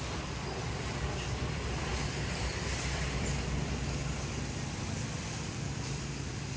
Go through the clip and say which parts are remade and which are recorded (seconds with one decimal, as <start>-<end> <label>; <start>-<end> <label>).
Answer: 0.0-4.0 remade; 4.0-4.8 recorded; 4.8-6.6 remade